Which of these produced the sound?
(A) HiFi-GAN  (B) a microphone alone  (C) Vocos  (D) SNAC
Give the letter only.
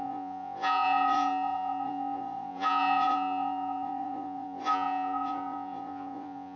C